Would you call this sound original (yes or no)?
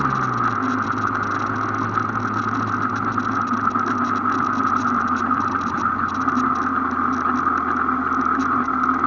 yes